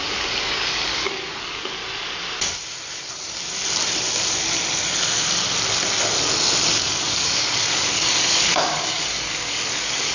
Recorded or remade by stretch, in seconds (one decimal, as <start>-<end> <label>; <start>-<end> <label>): 0.0-1.8 remade; 1.8-6.7 recorded; 6.7-10.1 remade